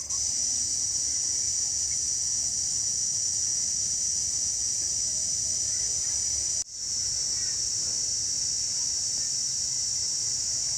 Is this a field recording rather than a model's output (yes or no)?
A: yes